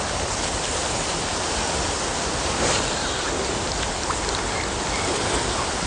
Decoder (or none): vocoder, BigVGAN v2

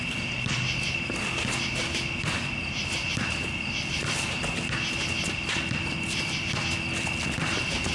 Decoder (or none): none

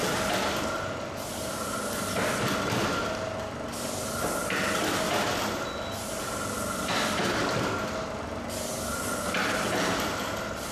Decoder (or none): none